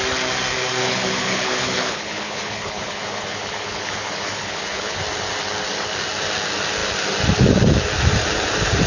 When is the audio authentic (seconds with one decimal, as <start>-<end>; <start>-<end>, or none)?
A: 0.0-0.8; 5.0-8.9